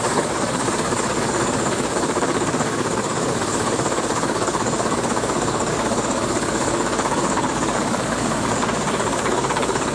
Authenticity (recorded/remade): remade